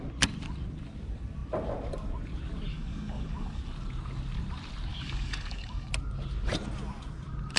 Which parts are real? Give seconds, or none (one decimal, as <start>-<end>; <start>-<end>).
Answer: 0.0-2.7; 3.6-4.9; 5.9-7.6